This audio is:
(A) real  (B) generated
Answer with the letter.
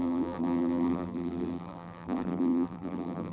B